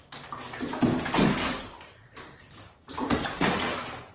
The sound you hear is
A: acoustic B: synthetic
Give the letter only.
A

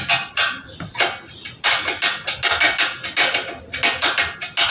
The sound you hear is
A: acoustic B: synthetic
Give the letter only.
A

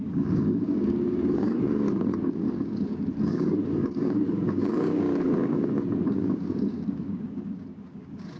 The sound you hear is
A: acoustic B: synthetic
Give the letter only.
B